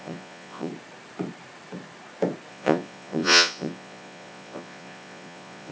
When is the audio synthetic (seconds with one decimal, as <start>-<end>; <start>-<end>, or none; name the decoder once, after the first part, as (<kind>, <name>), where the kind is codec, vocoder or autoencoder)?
0.0-0.7 (vocoder, Vocos); 2.5-5.7